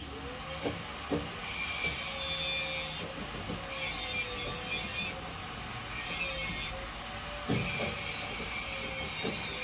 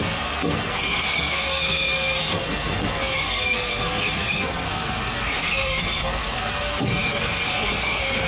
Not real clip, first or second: second